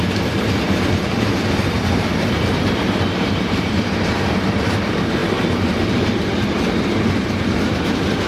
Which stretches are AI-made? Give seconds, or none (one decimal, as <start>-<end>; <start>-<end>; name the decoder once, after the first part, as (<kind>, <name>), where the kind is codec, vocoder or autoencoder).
0.0-5.2 (vocoder, BigVGAN v2); 7.1-8.3